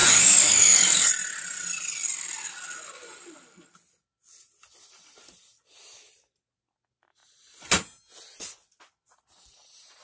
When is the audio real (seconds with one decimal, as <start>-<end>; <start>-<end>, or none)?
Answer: 1.1-10.0